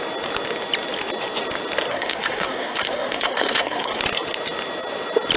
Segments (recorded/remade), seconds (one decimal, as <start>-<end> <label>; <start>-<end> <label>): 0.0-1.9 recorded; 1.9-4.0 remade; 4.0-5.4 recorded